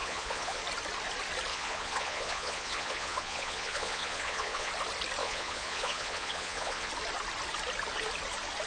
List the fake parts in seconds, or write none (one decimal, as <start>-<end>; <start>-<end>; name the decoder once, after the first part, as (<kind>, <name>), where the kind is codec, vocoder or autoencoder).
0.0-0.6 (vocoder, Vocos); 1.5-4.7; 5.2-6.9